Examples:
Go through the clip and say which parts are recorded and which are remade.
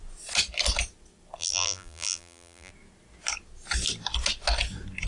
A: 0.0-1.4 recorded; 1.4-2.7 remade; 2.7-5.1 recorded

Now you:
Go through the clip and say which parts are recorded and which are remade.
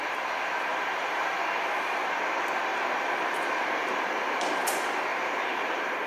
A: 0.0-0.7 recorded; 0.7-1.3 remade; 1.3-2.7 recorded; 2.7-4.5 remade; 4.5-5.1 recorded; 5.1-6.1 remade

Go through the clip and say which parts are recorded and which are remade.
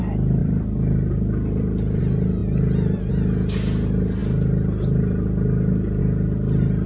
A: 0.0-0.4 recorded; 0.4-2.0 remade; 2.0-2.4 recorded; 2.4-3.1 remade; 3.1-6.9 recorded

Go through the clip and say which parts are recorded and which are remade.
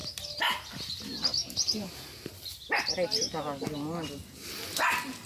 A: 0.0-1.4 recorded; 1.4-2.5 remade; 2.5-5.3 recorded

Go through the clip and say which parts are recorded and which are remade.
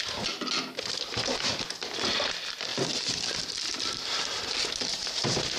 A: 0.0-2.7 recorded; 2.7-5.6 remade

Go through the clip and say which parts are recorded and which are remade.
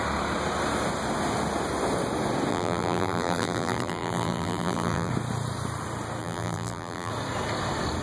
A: 0.0-2.5 recorded; 2.5-5.1 remade; 5.1-6.2 recorded; 6.2-7.1 remade; 7.1-8.0 recorded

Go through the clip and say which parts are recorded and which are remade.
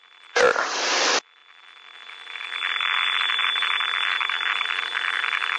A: 0.0-5.6 recorded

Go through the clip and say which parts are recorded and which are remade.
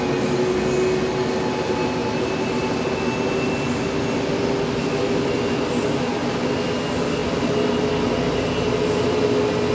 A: 0.0-9.7 recorded